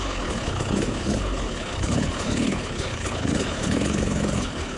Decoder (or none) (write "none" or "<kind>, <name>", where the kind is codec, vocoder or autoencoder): codec, HILCodec